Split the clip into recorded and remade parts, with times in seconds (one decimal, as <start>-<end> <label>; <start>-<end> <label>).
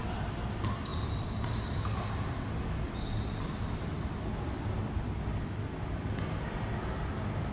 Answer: 0.0-0.9 recorded; 0.9-2.3 remade; 2.3-3.9 recorded; 3.9-4.8 remade; 4.8-7.5 recorded